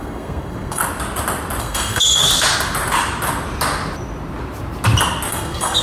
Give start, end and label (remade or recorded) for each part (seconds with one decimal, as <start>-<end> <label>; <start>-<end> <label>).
0.0-0.8 remade; 0.8-1.6 recorded; 1.6-2.2 remade; 2.2-5.3 recorded; 5.3-5.8 remade